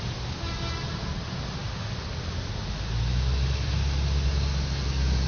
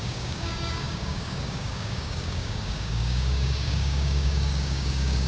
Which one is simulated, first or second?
second